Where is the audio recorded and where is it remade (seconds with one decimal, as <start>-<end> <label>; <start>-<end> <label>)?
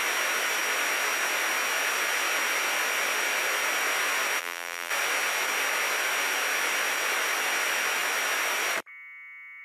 0.0-4.4 recorded; 4.4-4.9 remade; 4.9-9.6 recorded